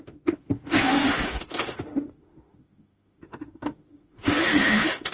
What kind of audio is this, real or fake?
fake